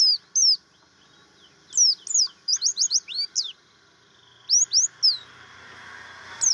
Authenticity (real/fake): real